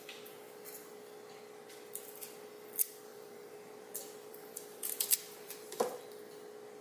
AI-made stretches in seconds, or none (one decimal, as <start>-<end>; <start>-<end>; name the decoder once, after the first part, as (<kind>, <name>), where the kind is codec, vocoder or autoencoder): 3.1-3.9 (vocoder, BigVGAN v2); 4.3-6.0

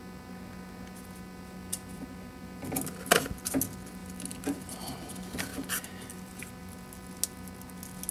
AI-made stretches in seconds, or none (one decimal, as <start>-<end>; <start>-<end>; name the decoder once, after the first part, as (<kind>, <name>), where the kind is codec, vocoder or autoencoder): 1.6-2.6 (vocoder, BigVGAN v2); 4.0-5.1; 5.5-6.6

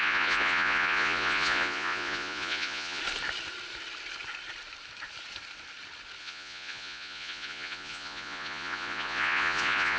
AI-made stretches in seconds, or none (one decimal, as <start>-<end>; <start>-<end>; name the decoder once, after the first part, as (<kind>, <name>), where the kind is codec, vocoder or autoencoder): 0.0-3.0 (vocoder, Vocos); 6.2-10.0

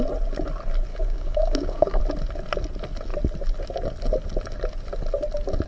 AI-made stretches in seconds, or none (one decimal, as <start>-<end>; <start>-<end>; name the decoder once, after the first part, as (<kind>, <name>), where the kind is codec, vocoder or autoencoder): 0.9-2.0 (codec, DAC)

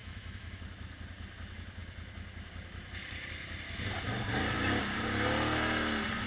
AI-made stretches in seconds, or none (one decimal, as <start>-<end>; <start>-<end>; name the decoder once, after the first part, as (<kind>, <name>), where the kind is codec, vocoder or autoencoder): 0.0-0.6 (autoencoder, DAC-VAE)

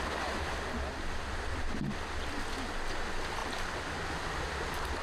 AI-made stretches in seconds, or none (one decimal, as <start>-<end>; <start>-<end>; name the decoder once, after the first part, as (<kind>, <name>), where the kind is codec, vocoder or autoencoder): none

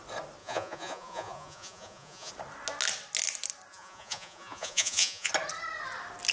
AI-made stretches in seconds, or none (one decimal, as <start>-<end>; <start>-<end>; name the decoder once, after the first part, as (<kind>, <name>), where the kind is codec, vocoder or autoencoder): 0.4-2.3 (vocoder, Vocos); 3.7-5.3